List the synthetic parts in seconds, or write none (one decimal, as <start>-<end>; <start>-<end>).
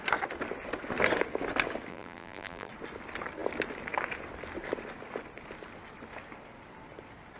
1.9-2.7